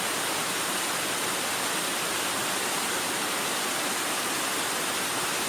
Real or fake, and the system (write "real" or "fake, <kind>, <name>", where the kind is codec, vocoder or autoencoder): real